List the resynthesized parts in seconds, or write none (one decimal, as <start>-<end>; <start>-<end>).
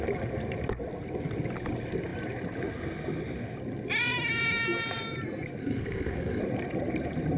5.6-6.4